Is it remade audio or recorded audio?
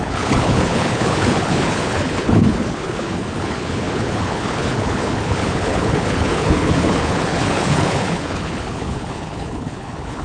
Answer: remade